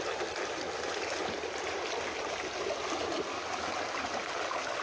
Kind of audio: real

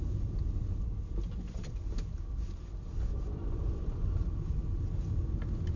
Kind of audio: real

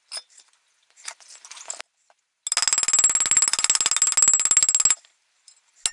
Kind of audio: real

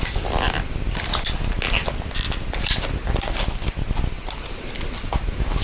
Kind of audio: real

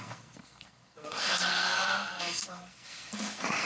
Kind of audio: fake